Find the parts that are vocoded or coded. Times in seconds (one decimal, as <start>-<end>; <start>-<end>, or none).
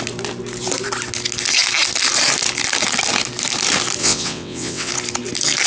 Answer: 4.0-4.9